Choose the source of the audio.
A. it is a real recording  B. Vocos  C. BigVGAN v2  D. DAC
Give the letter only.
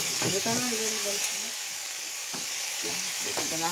D